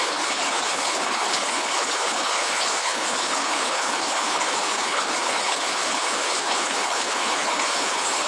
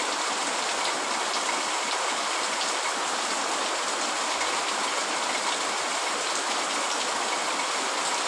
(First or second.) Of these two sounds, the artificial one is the first